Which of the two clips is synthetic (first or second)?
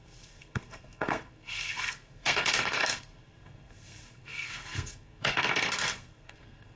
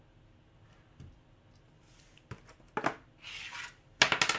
first